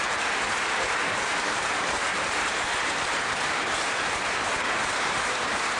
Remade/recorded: remade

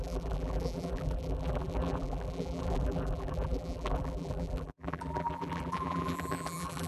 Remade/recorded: remade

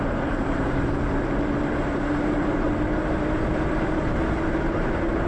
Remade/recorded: remade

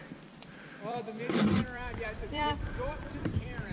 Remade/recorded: remade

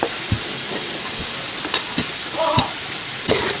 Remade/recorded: remade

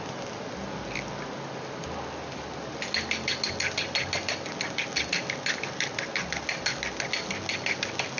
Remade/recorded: recorded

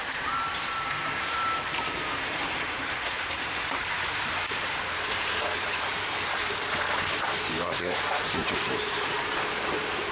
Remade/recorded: remade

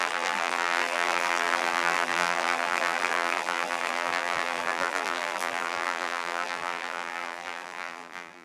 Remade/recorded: remade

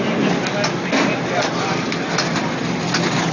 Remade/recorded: recorded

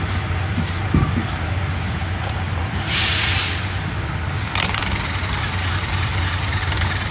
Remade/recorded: remade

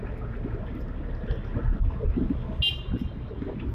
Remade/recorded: recorded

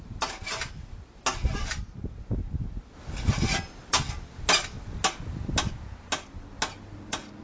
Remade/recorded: recorded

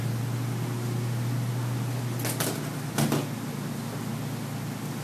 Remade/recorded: recorded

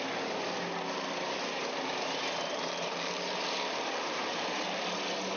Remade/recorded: recorded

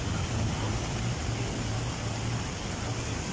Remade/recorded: recorded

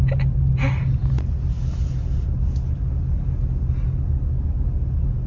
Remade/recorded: recorded